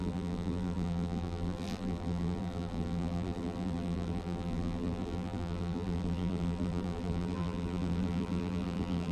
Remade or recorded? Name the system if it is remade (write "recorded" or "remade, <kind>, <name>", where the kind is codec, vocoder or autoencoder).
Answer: remade, vocoder, BigVGAN v2